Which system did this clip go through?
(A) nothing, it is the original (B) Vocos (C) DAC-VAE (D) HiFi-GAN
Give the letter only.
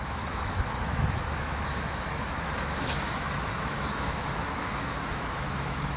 C